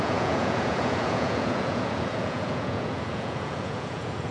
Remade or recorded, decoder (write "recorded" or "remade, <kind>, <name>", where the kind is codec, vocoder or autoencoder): remade, vocoder, Vocos